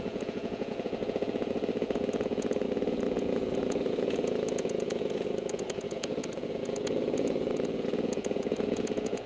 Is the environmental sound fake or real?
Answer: fake